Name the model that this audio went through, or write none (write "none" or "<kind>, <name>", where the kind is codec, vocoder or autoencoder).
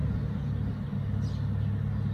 none